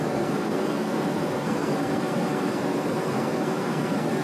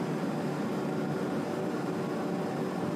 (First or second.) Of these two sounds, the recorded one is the second